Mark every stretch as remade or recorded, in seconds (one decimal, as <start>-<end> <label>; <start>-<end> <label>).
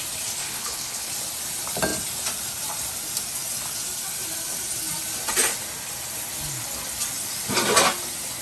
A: 0.0-0.4 recorded; 0.4-1.1 remade; 1.1-8.4 recorded